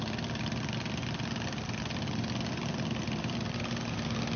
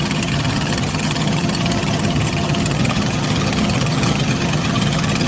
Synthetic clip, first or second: second